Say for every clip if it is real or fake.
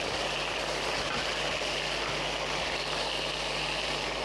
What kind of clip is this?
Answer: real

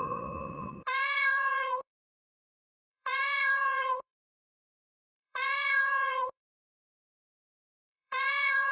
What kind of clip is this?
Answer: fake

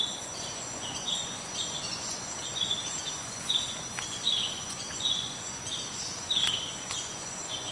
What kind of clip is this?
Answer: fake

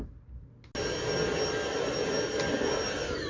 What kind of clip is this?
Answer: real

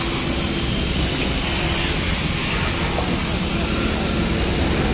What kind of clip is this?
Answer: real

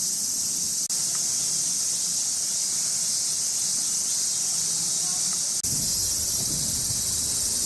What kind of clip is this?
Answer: real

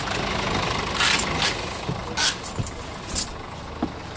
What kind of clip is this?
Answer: real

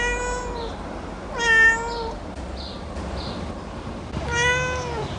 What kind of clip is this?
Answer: real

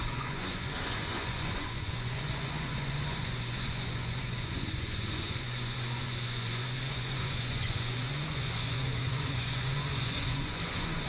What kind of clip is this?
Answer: fake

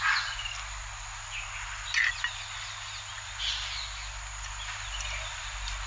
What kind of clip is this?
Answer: real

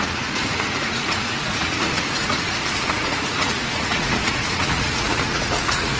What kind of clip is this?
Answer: fake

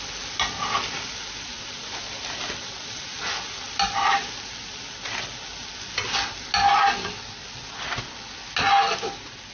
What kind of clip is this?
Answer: real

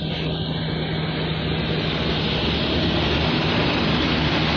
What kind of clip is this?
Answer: real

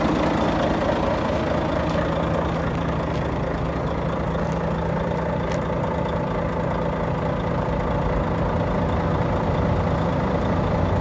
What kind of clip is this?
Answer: real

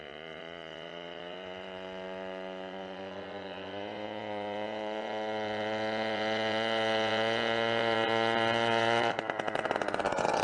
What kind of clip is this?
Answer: fake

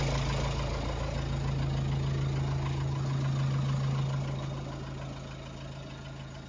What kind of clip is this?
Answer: real